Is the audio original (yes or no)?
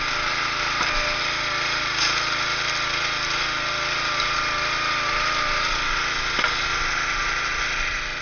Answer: yes